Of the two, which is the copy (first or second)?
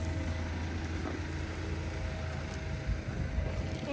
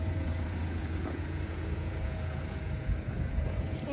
second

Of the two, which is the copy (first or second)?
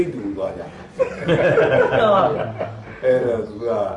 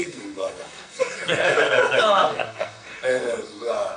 second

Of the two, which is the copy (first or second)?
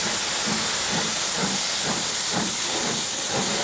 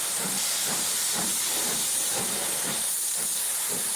second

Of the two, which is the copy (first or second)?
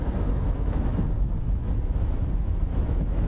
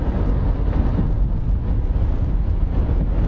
first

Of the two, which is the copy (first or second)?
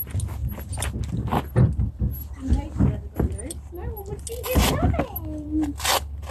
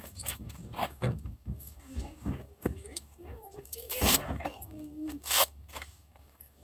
second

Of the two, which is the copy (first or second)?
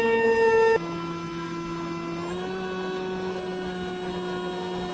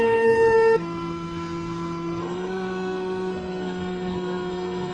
second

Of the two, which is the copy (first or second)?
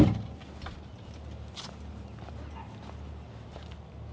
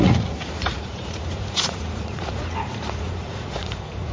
second